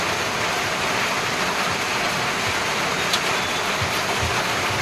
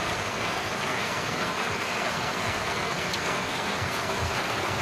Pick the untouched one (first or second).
first